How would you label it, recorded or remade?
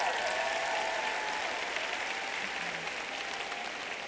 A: recorded